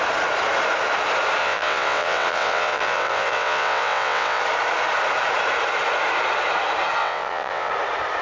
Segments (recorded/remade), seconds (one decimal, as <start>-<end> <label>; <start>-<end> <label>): 0.0-1.4 recorded; 1.4-4.4 remade; 4.4-7.0 recorded; 7.0-7.7 remade; 7.7-8.2 recorded